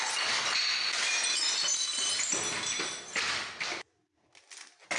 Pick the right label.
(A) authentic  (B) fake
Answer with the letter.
A